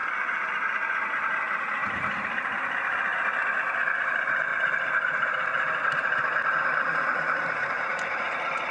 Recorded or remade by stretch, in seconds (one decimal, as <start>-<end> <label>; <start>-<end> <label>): 0.0-1.8 recorded; 1.8-2.6 remade; 2.6-4.5 recorded; 4.5-5.8 remade; 5.8-6.9 recorded; 6.9-8.7 remade